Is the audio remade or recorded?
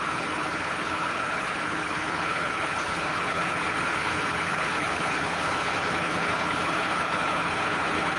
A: remade